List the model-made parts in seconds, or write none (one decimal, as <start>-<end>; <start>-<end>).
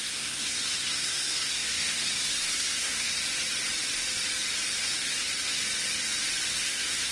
0.0-3.2; 4.8-5.6; 6.5-7.1